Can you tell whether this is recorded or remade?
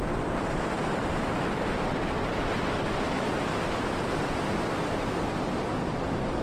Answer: recorded